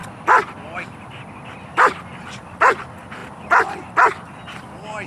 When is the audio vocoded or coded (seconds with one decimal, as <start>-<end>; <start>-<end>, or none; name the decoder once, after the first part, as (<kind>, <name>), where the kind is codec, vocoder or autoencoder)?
none